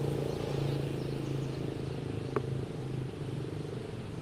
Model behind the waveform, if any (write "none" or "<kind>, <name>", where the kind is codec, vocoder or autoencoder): none